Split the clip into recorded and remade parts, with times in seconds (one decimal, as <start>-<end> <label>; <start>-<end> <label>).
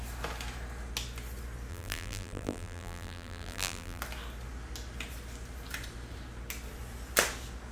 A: 0.0-1.7 recorded; 1.7-4.0 remade; 4.0-7.7 recorded